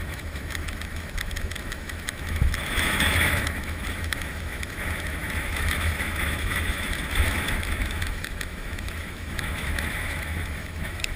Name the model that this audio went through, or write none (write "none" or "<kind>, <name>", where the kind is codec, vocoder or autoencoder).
autoencoder, DAC-VAE